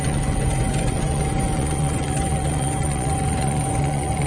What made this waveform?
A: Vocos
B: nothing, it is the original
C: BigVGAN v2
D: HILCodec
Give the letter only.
A